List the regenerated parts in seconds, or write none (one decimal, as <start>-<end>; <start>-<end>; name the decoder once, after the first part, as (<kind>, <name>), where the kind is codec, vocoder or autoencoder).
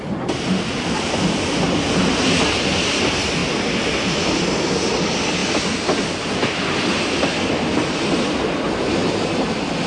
none